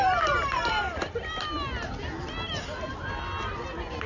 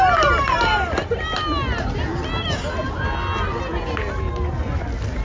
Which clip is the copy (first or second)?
first